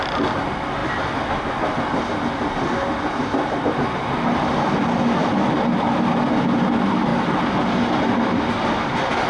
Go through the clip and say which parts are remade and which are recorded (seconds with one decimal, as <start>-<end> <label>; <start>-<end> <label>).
0.0-9.3 recorded

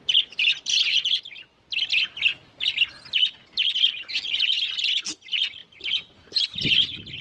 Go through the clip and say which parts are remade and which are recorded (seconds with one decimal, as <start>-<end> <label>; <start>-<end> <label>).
0.0-0.5 recorded; 0.5-1.6 remade; 1.6-5.6 recorded; 5.6-6.6 remade; 6.6-7.2 recorded

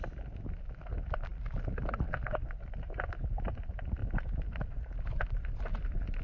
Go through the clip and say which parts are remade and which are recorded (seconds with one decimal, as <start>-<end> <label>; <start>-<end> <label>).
0.0-6.2 recorded

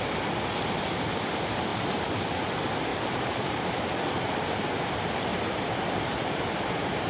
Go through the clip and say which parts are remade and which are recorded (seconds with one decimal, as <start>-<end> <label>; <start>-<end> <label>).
0.0-2.9 recorded; 2.9-3.9 remade; 3.9-5.3 recorded; 5.3-5.8 remade; 5.8-7.1 recorded